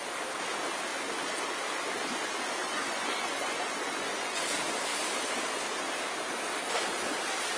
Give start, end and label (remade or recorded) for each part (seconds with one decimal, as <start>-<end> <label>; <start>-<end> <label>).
0.0-2.6 recorded; 2.6-4.4 remade; 4.4-7.6 recorded